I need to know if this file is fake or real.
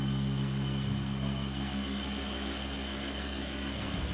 fake